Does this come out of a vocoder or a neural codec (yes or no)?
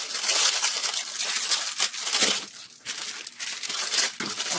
no